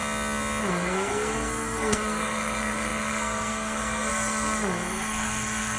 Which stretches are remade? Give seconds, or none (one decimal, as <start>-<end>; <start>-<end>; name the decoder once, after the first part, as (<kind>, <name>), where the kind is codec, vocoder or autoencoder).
0.6-5.8 (codec, SNAC)